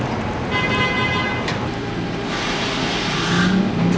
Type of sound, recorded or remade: recorded